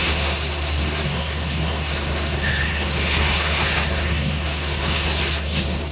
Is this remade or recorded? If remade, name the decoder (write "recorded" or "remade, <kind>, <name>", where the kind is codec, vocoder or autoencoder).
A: remade, codec, SNAC